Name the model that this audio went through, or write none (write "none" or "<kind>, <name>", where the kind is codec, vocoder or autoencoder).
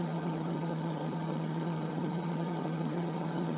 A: vocoder, HiFi-GAN